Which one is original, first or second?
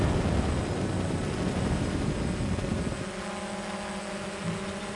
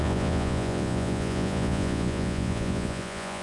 first